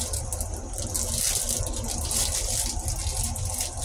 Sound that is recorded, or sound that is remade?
recorded